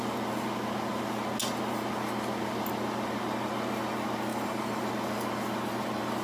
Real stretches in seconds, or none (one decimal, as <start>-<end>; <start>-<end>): 0.0-4.3; 4.9-6.2